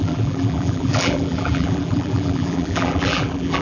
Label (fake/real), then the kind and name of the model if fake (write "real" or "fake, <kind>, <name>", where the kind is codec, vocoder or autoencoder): fake, vocoder, BigVGAN v2